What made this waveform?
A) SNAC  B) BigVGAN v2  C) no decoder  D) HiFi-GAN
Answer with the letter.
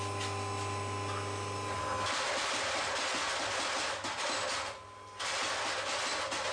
C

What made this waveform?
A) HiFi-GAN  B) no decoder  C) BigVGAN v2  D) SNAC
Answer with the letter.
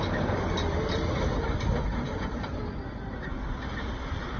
B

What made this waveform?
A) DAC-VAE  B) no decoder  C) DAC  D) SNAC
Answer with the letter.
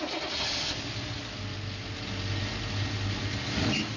B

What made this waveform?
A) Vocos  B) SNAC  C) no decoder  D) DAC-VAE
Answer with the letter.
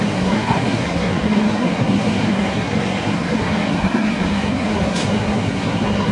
B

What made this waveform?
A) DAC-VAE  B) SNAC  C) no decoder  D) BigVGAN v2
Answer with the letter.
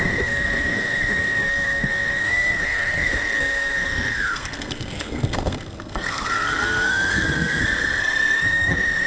B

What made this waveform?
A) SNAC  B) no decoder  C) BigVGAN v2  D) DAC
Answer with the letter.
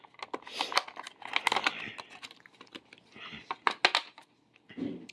B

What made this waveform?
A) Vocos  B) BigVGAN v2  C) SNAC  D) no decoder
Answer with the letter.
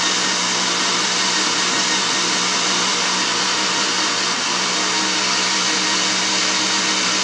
D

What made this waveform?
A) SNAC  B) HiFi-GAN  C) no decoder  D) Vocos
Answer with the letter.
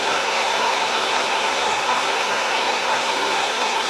A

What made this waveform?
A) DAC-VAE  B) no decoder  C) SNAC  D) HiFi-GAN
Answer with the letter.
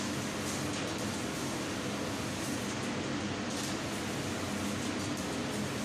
B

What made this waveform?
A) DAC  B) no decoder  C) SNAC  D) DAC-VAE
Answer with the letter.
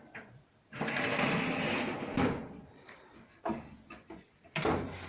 B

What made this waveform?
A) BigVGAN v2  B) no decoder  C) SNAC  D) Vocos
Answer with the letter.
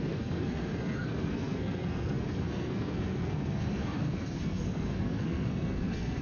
C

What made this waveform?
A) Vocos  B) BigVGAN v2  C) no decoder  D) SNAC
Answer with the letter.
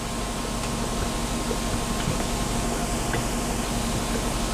C